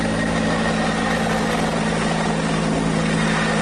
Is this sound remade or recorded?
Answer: recorded